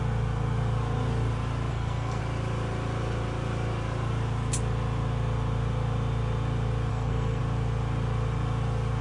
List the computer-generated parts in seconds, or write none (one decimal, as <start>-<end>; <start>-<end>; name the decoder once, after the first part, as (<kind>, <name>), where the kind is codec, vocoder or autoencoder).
1.7-2.2 (codec, SNAC); 6.9-7.4